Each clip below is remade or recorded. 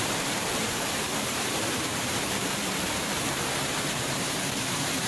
remade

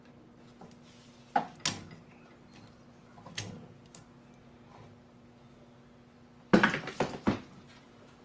recorded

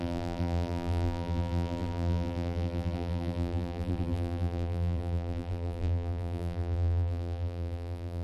remade